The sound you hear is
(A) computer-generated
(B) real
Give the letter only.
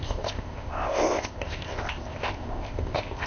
A